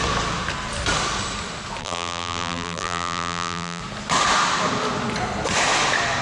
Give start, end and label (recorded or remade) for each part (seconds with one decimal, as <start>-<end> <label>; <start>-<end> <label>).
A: 0.0-1.8 recorded; 1.8-3.8 remade; 3.8-6.2 recorded